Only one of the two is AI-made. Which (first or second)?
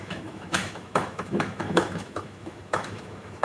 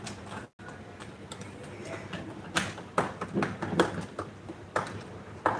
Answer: first